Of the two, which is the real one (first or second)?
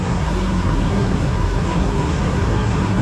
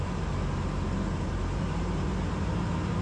second